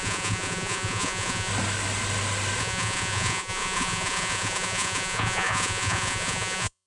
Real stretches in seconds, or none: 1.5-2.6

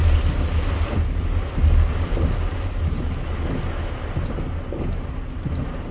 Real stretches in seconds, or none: 0.0-5.9